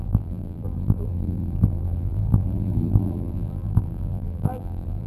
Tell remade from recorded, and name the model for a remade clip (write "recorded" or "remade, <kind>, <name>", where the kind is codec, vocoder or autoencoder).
remade, vocoder, BigVGAN v2